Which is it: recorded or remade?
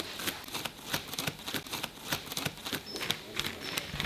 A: recorded